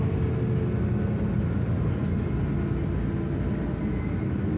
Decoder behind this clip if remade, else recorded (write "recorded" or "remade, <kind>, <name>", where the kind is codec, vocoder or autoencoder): recorded